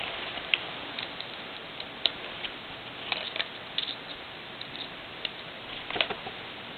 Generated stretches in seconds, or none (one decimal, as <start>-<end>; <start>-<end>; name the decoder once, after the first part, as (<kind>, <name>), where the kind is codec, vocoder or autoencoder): none

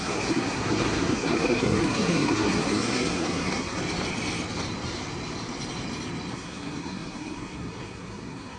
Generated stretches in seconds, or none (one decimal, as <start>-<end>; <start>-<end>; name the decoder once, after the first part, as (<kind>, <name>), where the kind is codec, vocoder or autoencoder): 0.0-3.8 (codec, SNAC); 6.3-8.6

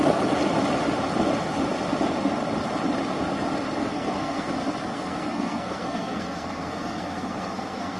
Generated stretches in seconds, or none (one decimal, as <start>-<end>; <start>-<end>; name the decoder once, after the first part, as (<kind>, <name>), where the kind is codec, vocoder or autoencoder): 3.8-4.5 (codec, SNAC); 4.9-8.0

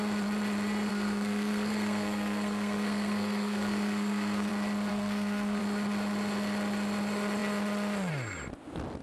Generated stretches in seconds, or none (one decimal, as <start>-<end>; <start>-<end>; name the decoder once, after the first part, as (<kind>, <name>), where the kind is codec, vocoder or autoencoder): 0.9-4.5 (codec, SNAC); 4.9-5.6

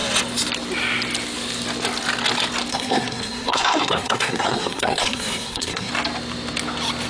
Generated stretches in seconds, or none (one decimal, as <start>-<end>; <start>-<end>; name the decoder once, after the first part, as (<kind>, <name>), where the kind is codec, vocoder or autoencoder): 2.7-5.9 (codec, SNAC)